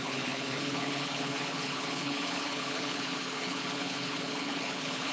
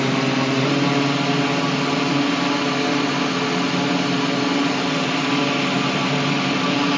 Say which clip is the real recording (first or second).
second